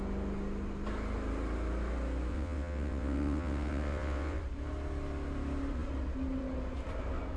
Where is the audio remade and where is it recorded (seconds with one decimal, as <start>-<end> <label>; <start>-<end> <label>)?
0.0-2.3 recorded; 2.3-4.4 remade; 4.4-7.4 recorded